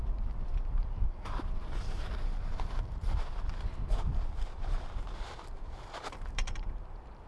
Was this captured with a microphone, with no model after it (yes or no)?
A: no